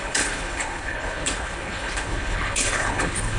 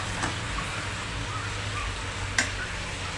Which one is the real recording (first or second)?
second